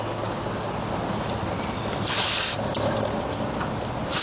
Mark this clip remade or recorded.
recorded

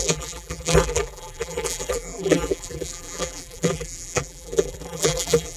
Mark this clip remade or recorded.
remade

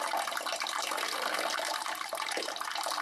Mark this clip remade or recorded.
remade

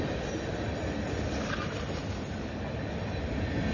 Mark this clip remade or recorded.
recorded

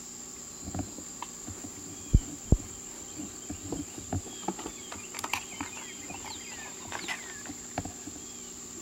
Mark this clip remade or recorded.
remade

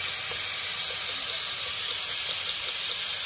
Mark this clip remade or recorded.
recorded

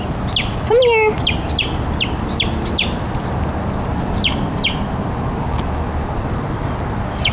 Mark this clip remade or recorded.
recorded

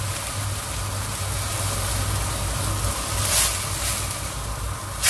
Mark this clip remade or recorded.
recorded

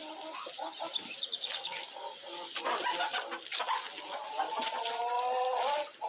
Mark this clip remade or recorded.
recorded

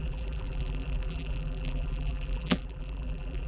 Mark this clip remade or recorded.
remade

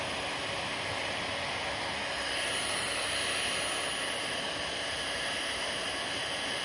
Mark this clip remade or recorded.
recorded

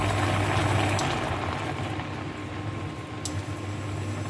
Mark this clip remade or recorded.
recorded